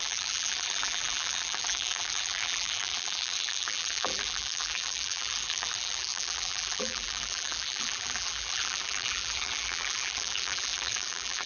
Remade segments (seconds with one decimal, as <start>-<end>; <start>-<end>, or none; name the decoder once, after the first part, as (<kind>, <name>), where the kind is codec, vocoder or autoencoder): 0.0-11.5 (vocoder, BigVGAN v2)